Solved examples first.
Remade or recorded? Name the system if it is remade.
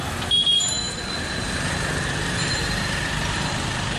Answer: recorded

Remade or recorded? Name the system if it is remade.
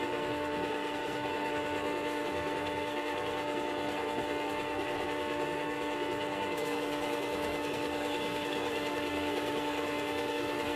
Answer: remade, codec, SNAC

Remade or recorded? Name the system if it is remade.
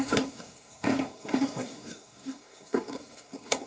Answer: remade, codec, SNAC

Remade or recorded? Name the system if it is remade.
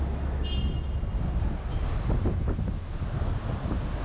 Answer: recorded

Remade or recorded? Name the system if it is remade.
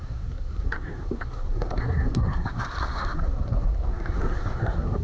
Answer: remade, codec, SNAC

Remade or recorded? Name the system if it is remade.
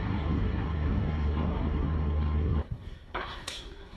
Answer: remade, codec, SNAC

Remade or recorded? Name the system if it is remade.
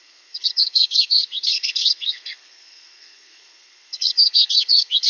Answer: remade, codec, SNAC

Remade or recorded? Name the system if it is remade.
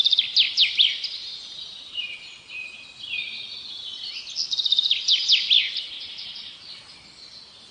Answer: recorded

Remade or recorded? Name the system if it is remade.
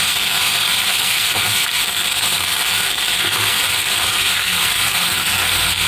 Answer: remade, codec, SNAC